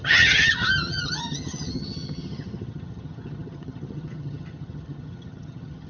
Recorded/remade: remade